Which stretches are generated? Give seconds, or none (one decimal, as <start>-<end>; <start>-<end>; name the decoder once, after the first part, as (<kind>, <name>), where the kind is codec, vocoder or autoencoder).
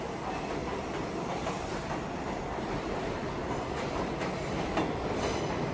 0.6-4.0 (vocoder, BigVGAN v2)